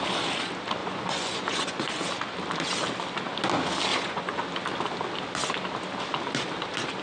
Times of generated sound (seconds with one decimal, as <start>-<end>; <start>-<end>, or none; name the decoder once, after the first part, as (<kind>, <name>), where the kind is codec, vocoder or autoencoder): 0.8-2.0 (vocoder, Vocos); 3.9-4.4